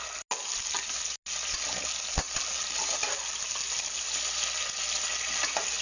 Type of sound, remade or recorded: recorded